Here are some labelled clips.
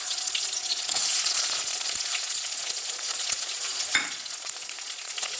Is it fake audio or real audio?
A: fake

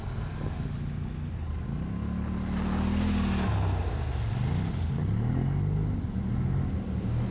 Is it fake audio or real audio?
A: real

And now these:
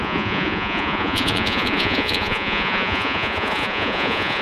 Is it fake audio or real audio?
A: fake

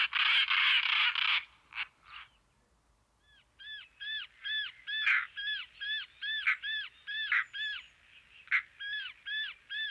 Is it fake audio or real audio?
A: real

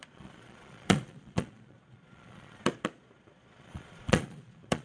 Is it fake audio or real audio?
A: fake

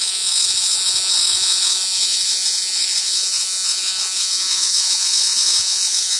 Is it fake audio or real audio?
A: fake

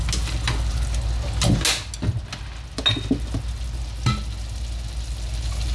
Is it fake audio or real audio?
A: real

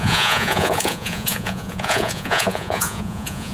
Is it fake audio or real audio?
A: fake